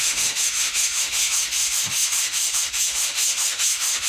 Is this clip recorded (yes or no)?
no